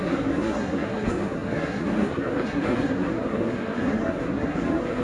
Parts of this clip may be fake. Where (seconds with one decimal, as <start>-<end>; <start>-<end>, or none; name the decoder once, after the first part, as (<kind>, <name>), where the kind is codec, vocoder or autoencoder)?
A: 0.0-5.0 (codec, SNAC)